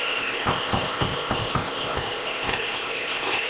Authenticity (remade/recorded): remade